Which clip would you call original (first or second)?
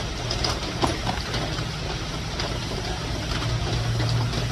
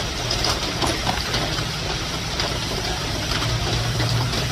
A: first